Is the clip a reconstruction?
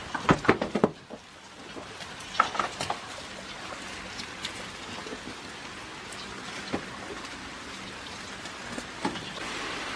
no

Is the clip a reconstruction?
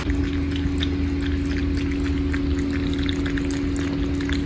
no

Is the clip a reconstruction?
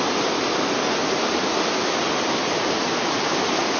no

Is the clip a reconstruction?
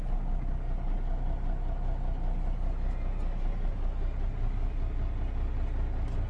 no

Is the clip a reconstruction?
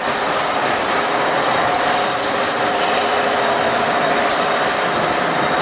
yes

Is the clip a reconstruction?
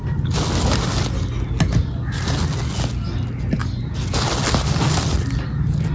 no